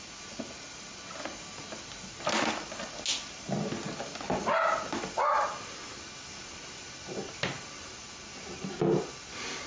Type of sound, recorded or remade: recorded